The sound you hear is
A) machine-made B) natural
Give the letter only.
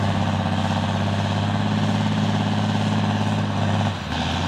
B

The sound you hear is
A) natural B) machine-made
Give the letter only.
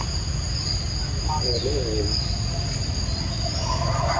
A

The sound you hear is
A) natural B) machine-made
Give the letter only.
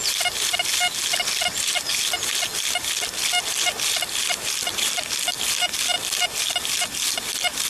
A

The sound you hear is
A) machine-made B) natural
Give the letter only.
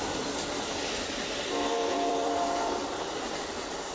A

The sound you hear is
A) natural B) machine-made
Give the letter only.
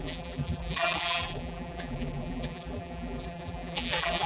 B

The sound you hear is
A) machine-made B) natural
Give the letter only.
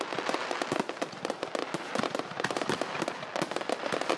A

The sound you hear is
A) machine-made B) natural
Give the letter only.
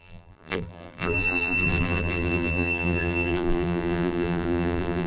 A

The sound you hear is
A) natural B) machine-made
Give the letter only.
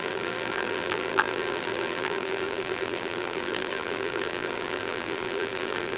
B